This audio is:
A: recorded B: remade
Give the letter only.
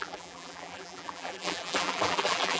B